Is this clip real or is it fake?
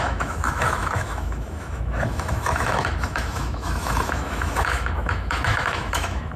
fake